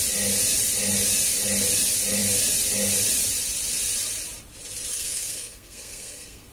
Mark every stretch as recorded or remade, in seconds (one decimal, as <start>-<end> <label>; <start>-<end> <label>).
0.0-4.9 recorded; 4.9-6.5 remade